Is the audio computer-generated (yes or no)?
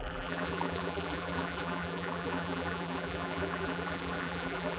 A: yes